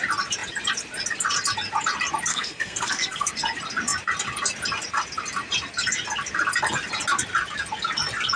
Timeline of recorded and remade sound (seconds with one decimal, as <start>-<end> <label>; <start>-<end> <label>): 0.0-2.3 recorded; 2.3-3.3 remade; 3.3-8.4 recorded